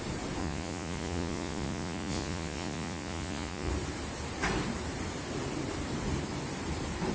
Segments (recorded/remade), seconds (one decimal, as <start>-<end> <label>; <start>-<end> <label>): 0.0-0.4 recorded; 0.4-3.7 remade; 3.7-7.1 recorded